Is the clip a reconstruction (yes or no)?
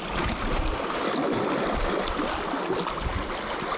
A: no